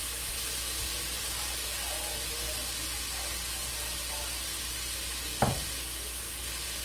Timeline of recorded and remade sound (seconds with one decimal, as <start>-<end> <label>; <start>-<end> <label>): 0.0-6.8 recorded